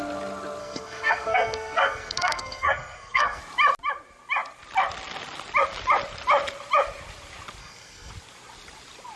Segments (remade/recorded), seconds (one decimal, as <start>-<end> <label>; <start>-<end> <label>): 0.0-0.6 recorded; 0.6-3.4 remade; 3.4-7.6 recorded; 7.6-8.1 remade; 8.1-9.2 recorded